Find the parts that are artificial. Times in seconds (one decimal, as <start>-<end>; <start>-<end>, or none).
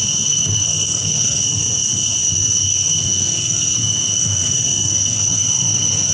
0.0-6.1